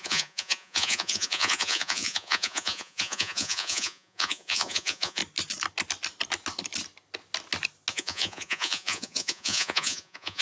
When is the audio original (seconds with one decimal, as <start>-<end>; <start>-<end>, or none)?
5.2-7.9